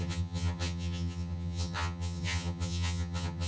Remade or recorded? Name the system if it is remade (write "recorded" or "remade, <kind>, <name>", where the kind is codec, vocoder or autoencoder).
remade, vocoder, HiFi-GAN